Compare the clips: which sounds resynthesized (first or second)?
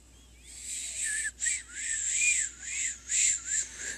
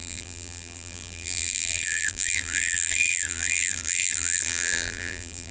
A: second